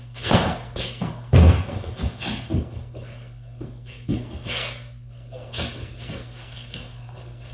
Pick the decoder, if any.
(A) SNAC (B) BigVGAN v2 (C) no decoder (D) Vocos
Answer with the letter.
A